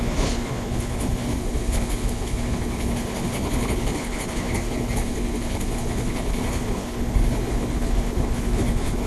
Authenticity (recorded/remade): remade